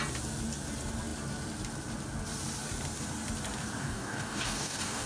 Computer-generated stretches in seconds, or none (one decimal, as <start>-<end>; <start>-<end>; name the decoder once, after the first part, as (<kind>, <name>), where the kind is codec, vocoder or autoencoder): 3.8-5.1 (codec, DAC)